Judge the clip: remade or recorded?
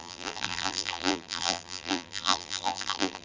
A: remade